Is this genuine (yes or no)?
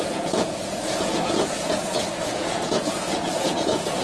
no